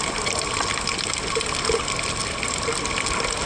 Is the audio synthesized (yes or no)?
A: no